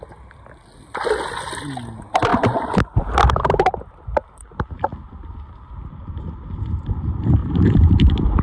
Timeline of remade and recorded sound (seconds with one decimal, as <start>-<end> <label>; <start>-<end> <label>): 0.0-7.4 recorded; 7.4-8.4 remade